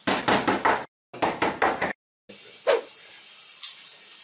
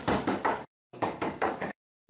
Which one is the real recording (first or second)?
first